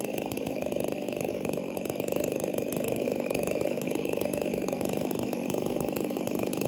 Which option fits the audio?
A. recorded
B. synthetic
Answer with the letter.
B